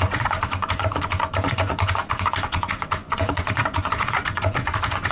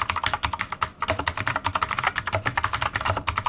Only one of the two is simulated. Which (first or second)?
first